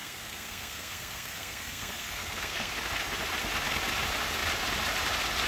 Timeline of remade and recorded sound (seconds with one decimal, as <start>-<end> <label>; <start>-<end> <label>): 0.0-2.7 remade; 2.7-5.5 recorded